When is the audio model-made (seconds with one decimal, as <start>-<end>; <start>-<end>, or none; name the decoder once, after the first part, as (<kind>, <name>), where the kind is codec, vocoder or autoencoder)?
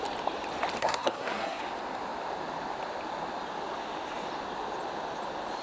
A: 0.8-1.6 (codec, SNAC)